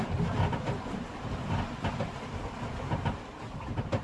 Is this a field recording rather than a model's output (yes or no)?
no